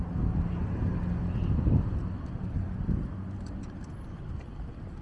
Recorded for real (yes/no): yes